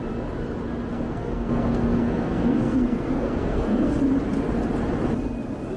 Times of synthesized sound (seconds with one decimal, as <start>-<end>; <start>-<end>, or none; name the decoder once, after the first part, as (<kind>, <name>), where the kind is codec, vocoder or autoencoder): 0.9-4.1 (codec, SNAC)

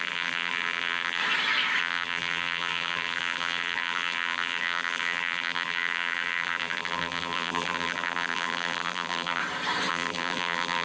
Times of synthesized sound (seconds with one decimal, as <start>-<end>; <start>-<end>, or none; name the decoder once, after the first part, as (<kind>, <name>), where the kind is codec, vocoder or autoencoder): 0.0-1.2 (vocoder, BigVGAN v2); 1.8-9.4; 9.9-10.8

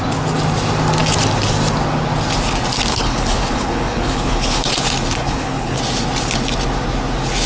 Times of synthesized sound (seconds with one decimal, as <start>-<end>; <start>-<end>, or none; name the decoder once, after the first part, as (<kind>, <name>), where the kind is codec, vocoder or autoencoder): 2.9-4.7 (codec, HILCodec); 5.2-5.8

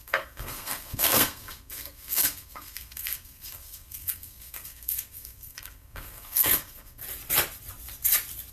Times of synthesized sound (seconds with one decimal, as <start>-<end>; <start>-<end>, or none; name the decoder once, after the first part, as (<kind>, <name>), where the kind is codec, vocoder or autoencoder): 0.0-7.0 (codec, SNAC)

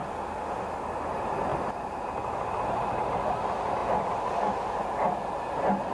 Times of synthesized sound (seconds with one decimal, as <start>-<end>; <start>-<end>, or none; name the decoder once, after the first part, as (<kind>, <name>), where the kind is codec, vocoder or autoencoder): none

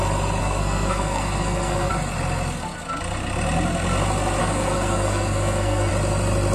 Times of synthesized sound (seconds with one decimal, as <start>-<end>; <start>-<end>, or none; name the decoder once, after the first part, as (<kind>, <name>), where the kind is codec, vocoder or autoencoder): 0.4-1.9 (codec, SNAC); 4.4-5.9